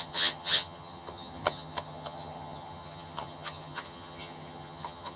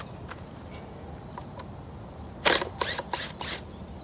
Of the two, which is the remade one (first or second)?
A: first